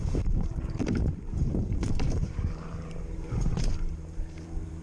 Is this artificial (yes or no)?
yes